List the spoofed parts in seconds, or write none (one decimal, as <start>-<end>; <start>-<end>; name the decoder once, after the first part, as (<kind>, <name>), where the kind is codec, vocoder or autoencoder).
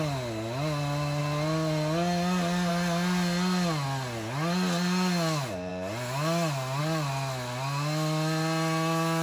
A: none